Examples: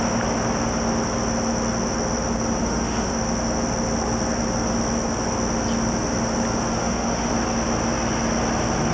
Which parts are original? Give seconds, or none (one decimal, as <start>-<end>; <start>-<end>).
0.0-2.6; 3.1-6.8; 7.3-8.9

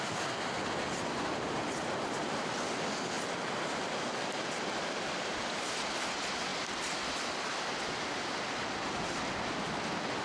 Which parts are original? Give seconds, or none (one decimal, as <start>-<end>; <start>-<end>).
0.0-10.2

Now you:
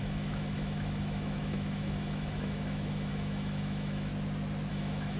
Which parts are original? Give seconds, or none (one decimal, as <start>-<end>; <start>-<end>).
4.1-4.7

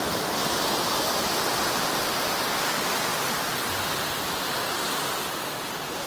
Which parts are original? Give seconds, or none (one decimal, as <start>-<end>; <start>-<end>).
0.0-6.1

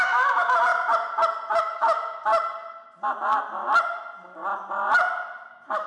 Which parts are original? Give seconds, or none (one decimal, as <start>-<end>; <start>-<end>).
0.7-1.6; 2.3-5.5

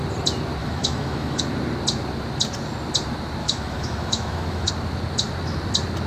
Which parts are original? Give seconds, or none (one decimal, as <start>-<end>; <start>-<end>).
0.0-0.6; 1.4-3.4; 4.7-6.1